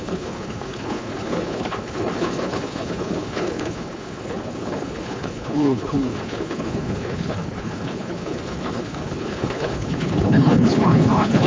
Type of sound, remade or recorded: remade